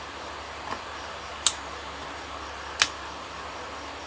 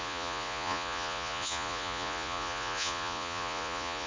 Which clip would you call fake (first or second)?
second